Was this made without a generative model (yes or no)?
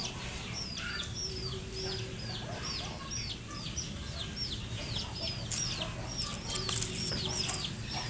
yes